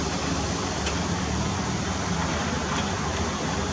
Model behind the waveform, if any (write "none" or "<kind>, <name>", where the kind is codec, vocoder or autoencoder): none